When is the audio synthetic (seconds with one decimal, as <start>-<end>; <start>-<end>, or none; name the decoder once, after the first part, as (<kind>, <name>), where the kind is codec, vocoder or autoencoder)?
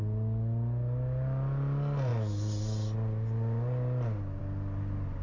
none